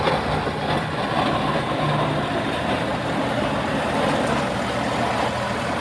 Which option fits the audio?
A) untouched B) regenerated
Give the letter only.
A